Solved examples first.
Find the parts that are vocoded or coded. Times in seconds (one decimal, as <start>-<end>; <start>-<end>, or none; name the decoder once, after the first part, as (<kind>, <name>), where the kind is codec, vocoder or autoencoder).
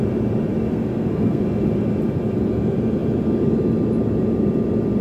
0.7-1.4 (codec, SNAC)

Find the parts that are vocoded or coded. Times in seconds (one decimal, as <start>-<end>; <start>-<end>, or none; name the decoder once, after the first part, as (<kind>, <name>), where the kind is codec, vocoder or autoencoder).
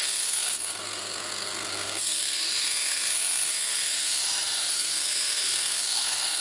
0.0-4.2 (codec, SNAC); 4.7-6.4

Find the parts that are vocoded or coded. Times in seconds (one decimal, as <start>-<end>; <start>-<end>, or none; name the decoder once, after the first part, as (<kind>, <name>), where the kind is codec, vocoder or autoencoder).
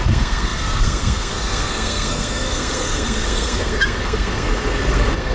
0.0-5.3 (codec, SNAC)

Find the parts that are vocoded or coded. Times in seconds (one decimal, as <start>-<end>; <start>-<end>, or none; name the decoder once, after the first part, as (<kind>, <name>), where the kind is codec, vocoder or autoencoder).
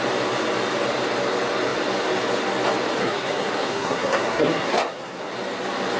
3.0-5.3 (codec, SNAC)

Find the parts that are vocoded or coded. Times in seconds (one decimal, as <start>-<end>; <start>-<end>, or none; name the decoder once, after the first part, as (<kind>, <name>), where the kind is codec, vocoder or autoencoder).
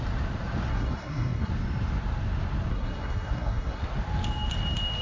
0.7-1.5 (codec, SNAC); 2.7-3.8